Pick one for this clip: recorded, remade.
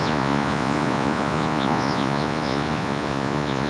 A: remade